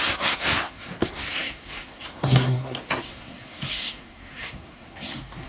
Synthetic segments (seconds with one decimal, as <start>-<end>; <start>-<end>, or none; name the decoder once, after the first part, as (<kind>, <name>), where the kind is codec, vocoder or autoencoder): 0.0-5.5 (codec, SNAC)